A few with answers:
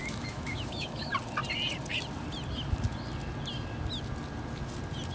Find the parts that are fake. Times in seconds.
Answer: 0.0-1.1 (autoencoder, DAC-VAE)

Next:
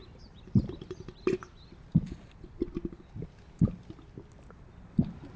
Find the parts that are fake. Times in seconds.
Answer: 0.0-5.4 (vocoder, BigVGAN v2)

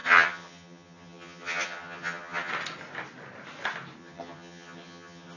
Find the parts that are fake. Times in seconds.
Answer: 0.0-2.5 (vocoder, HiFi-GAN); 4.0-5.4

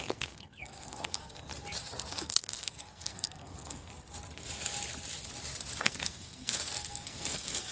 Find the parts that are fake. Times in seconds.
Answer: 0.0-1.5 (codec, SNAC); 2.1-3.9; 5.8-7.7

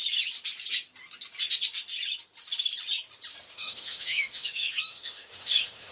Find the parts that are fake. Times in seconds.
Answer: 3.5-5.9 (autoencoder, DAC-VAE)

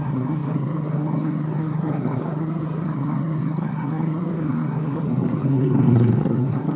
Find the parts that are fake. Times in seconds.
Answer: 0.0-6.8 (codec, SNAC)

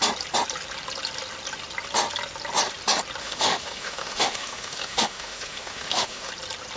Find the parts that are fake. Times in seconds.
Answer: 3.2-6.3 (autoencoder, DAC-VAE)